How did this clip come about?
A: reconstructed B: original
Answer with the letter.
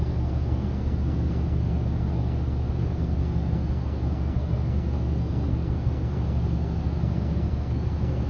A